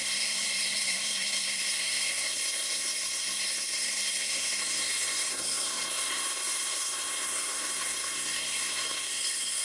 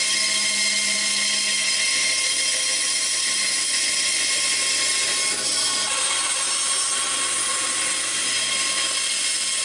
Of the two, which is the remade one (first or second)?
first